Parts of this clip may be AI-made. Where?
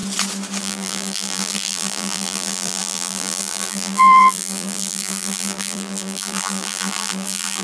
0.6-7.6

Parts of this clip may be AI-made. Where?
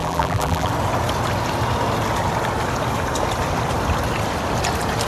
0.0-0.7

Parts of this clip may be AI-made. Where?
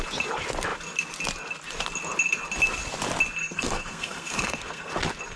3.4-4.9